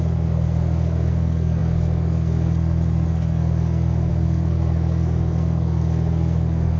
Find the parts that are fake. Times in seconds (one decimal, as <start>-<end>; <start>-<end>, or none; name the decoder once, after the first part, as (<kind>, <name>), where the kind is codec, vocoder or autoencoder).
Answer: 0.0-6.8 (codec, SNAC)